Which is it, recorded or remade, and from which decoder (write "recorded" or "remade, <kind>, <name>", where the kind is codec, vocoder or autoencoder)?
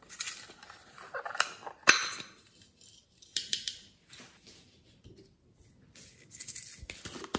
recorded